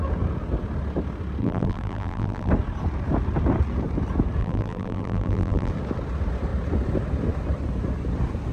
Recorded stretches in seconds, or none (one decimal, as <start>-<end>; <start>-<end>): 0.0-1.4; 2.5-4.4; 5.7-8.5